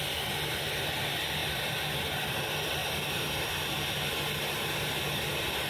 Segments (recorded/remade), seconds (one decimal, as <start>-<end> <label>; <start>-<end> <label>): 0.0-5.7 recorded